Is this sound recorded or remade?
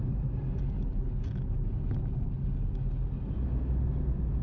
recorded